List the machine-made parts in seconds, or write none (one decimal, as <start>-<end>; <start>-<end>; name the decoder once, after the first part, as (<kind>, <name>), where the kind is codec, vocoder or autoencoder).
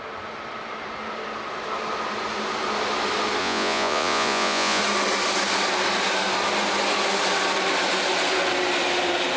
3.4-4.8 (vocoder, Vocos)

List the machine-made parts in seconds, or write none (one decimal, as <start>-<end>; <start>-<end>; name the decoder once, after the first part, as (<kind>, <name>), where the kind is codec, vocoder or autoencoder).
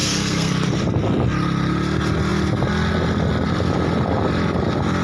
0.0-0.5 (codec, SNAC)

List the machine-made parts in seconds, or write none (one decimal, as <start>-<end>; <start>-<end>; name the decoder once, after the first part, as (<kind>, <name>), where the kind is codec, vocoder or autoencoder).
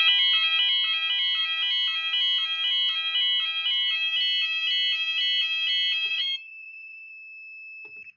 6.1-7.1 (vocoder, BigVGAN v2)